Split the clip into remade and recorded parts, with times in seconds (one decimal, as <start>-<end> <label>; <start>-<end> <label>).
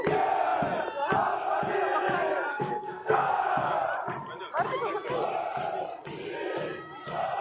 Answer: 0.0-2.5 recorded; 2.5-3.4 remade; 3.4-7.4 recorded